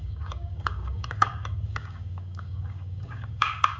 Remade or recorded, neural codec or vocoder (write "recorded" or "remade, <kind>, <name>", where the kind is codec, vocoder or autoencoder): remade, codec, DAC